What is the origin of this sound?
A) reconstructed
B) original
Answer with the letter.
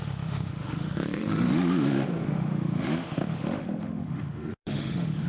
A